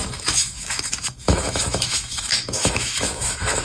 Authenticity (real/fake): fake